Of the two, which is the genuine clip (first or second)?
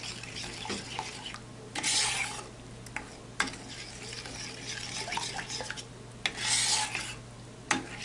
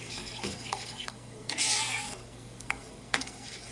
first